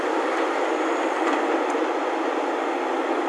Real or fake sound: real